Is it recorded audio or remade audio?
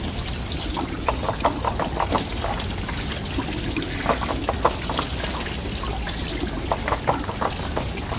recorded